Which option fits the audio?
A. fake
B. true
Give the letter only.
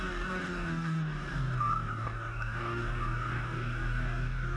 A